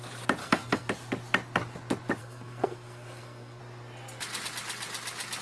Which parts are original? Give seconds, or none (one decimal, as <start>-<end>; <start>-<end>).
0.0-0.4; 0.9-2.2; 3.6-5.4